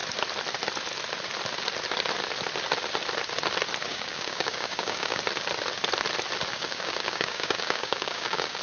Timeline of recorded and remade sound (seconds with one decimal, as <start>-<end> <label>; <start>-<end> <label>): 0.0-3.9 recorded; 3.9-5.2 remade; 5.2-6.5 recorded; 6.5-8.6 remade